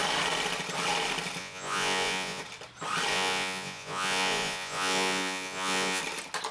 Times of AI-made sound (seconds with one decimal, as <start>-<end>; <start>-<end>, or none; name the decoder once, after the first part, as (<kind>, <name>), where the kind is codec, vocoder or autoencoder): 1.4-2.4 (vocoder, Vocos); 3.1-6.0